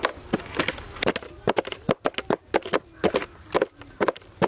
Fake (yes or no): no